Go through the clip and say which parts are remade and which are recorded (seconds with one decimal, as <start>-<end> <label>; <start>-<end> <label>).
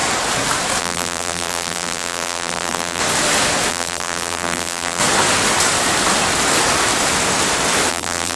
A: 0.0-0.8 recorded; 0.8-3.0 remade; 3.0-3.7 recorded; 3.7-5.0 remade; 5.0-7.9 recorded; 7.9-8.4 remade